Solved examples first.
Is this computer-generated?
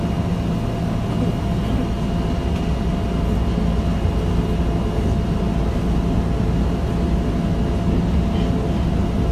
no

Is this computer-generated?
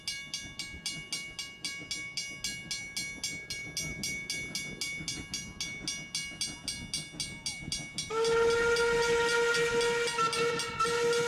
no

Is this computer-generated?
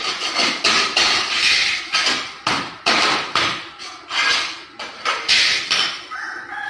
no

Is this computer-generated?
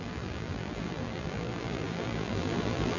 yes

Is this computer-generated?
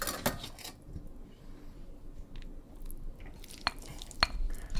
no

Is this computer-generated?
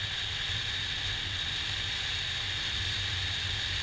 no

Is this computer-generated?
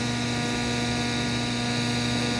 no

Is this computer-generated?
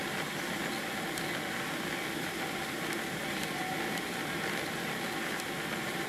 no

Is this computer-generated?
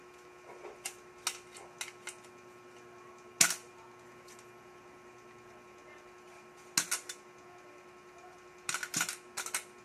no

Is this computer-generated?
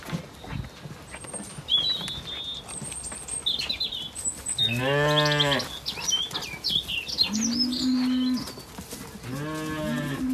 no